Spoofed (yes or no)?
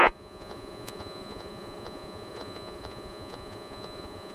yes